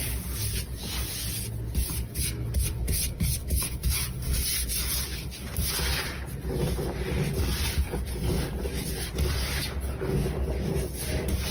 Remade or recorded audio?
recorded